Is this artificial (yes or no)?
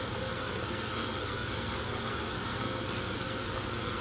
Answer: yes